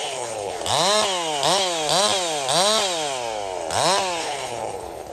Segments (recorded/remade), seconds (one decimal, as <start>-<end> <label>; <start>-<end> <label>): 0.0-0.6 remade; 0.6-4.2 recorded; 4.2-5.1 remade